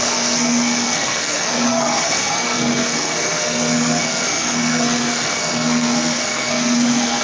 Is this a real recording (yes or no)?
no